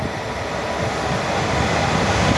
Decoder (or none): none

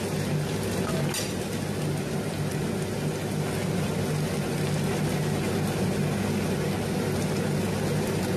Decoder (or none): none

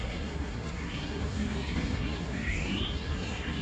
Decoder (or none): codec, SNAC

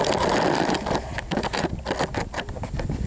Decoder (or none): none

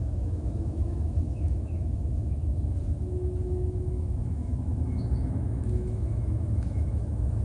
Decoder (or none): autoencoder, DAC-VAE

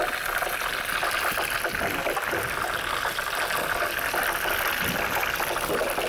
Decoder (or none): none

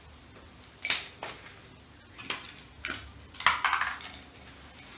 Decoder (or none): none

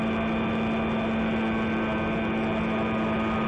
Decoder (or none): none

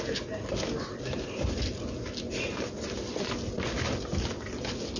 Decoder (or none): none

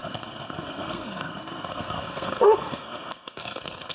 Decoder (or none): codec, SNAC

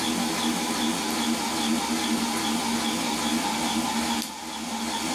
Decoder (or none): none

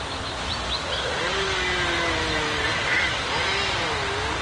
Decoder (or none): none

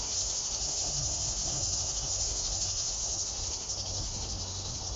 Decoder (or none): codec, SNAC